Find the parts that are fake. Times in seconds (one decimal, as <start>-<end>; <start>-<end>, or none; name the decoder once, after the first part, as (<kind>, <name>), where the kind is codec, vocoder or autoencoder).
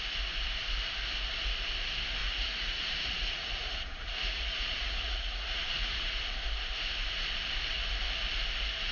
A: 2.2-6.1 (vocoder, Vocos)